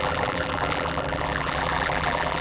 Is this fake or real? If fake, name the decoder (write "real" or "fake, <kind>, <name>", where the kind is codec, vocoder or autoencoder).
fake, vocoder, BigVGAN v2